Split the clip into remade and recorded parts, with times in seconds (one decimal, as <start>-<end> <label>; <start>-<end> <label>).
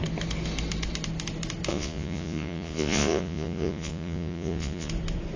0.0-1.7 recorded; 1.7-4.9 remade; 4.9-5.4 recorded